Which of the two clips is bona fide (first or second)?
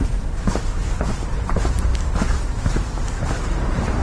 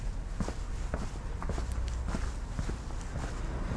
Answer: second